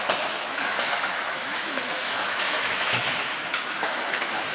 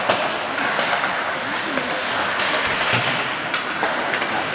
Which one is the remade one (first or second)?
first